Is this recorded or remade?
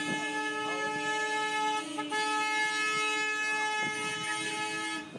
recorded